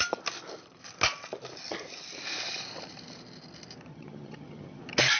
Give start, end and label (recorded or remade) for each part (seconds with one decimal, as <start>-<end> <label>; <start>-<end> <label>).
0.0-3.9 recorded; 3.9-4.8 remade; 4.8-5.2 recorded